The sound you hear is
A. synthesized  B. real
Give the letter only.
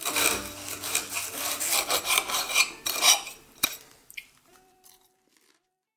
A